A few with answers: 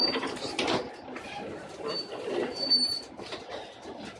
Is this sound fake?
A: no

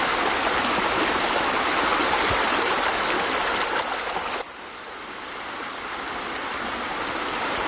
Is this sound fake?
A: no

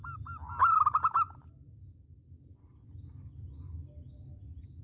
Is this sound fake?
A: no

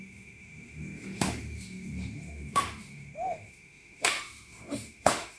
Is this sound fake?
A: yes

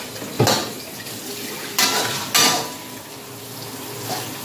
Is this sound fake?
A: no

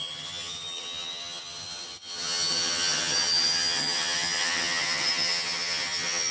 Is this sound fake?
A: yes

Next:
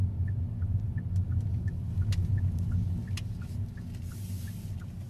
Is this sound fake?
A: no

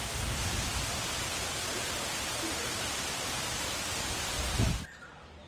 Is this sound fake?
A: no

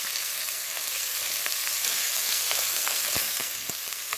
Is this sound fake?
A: yes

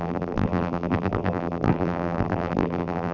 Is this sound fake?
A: yes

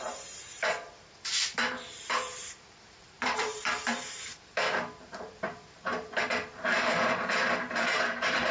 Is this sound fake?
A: yes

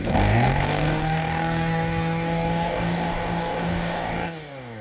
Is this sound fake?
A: yes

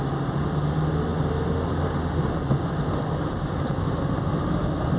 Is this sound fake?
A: no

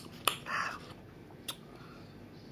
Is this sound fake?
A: no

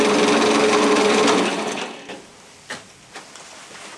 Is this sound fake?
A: no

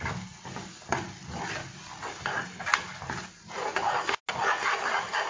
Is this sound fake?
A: no